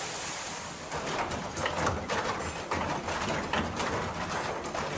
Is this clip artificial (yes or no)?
no